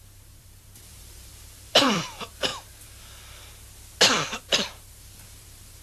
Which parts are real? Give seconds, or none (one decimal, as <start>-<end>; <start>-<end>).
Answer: 2.5-5.0